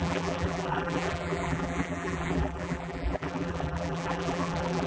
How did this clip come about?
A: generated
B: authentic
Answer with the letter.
A